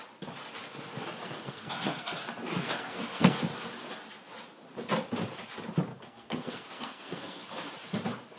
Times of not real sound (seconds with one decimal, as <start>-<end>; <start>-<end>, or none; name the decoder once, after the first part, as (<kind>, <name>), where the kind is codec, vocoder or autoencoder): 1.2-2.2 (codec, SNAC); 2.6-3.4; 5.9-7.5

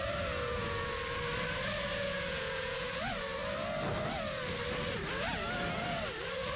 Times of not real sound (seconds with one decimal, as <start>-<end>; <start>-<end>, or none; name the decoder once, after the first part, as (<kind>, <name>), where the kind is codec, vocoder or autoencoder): 1.9-2.9 (vocoder, Vocos)

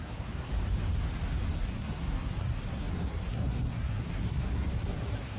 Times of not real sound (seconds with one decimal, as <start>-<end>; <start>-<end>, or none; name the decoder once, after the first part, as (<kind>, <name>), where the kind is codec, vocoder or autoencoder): 0.0-0.5 (codec, SNAC); 1.5-5.4

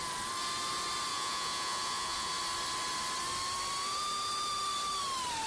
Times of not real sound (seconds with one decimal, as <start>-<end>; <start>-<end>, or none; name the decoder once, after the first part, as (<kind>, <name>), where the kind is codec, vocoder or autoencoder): 1.1-2.3 (vocoder, Vocos)